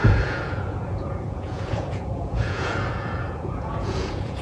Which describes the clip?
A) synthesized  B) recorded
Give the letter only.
A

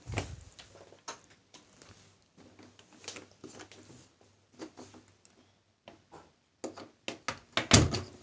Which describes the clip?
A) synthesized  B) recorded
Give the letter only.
B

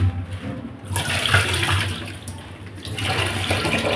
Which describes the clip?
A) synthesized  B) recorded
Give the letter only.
B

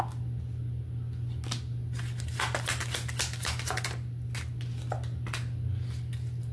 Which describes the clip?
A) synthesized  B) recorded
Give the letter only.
B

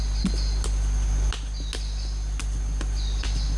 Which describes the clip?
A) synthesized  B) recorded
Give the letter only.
B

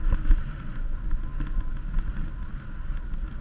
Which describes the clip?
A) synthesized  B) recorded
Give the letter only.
B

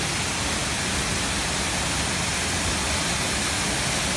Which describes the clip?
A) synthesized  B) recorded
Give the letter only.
B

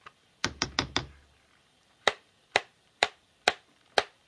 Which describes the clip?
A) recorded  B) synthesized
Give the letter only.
B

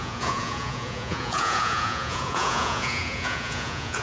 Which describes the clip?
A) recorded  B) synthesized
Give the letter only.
B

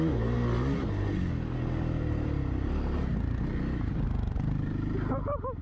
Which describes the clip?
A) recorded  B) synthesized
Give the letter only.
A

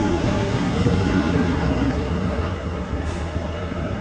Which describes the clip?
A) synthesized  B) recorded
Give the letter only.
A